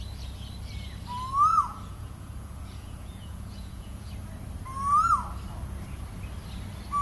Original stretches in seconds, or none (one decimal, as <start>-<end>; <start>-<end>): 0.0-1.5; 4.1-7.0